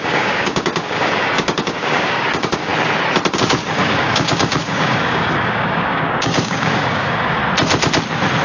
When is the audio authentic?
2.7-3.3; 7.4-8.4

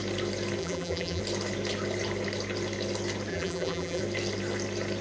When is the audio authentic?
0.0-0.6; 1.2-3.3; 4.0-5.0

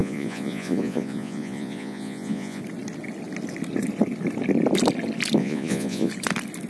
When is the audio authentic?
2.6-5.4; 6.1-6.7

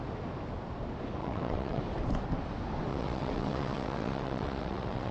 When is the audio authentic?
0.0-1.2; 1.8-2.9

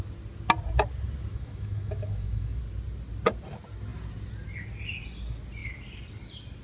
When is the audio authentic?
0.0-1.3; 2.6-6.6

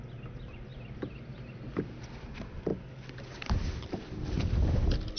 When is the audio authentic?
0.0-5.2

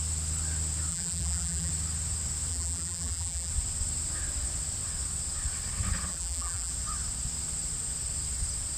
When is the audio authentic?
0.0-0.9; 1.7-2.5; 3.5-6.1; 6.7-8.8

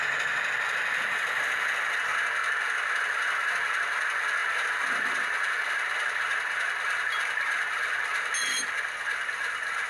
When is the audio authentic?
0.0-9.9